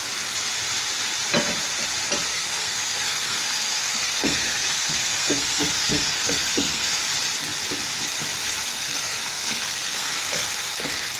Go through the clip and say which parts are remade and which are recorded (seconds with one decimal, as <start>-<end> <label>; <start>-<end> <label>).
0.0-2.3 recorded; 2.3-7.0 remade; 7.0-8.7 recorded; 8.7-11.2 remade